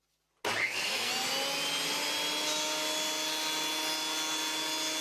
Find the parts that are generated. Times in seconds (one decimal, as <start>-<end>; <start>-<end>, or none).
0.6-1.1